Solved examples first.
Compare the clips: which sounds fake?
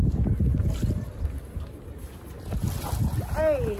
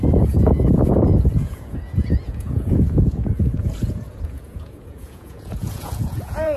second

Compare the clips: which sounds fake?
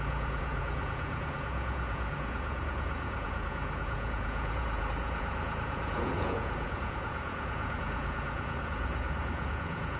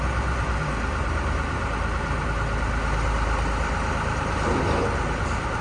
first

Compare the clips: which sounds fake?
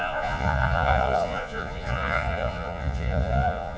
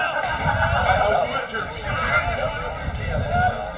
first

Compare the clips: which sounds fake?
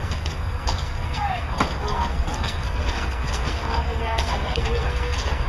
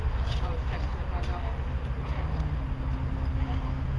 first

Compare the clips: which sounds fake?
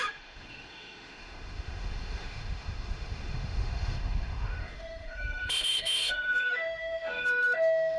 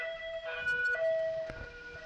first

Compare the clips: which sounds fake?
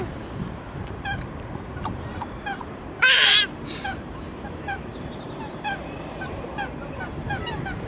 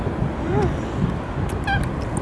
first